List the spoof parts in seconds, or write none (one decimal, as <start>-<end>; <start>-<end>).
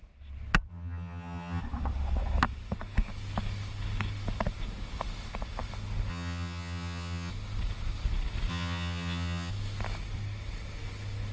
0.7-1.6; 6.1-7.3; 8.5-9.5